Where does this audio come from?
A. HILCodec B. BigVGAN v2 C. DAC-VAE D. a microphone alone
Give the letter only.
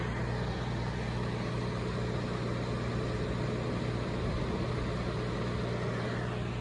D